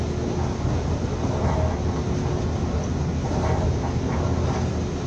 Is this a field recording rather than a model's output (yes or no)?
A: yes